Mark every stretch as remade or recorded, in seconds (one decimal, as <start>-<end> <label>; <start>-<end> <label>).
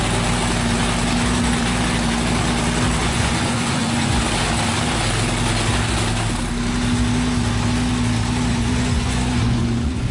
0.0-3.0 recorded; 3.0-4.2 remade; 4.2-8.5 recorded; 8.5-10.1 remade